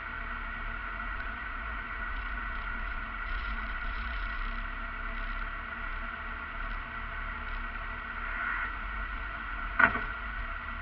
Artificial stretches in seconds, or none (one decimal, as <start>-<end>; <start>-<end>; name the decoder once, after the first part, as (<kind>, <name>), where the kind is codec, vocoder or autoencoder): 0.8-4.4 (vocoder, Vocos); 8.4-10.4